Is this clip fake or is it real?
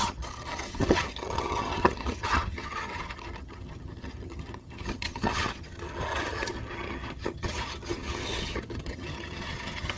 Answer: fake